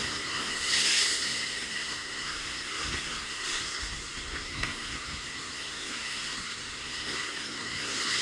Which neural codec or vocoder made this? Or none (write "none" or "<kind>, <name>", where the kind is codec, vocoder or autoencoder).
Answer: codec, SNAC